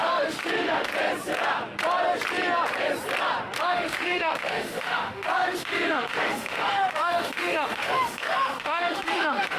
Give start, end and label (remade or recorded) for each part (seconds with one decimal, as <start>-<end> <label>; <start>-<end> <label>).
0.0-0.9 remade; 0.9-3.6 recorded; 3.6-9.6 remade